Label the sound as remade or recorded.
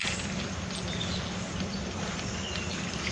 recorded